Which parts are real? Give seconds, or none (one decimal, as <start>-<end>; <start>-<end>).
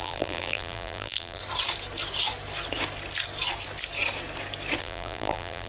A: 1.4-4.8